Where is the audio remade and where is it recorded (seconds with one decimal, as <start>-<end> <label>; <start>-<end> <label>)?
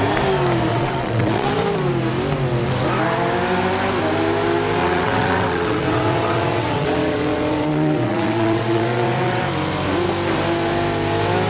0.0-0.7 recorded; 0.7-1.5 remade; 1.5-4.8 recorded; 4.8-9.4 remade; 9.4-11.5 recorded